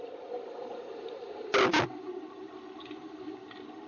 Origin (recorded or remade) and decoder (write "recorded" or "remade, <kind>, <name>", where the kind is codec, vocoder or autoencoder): recorded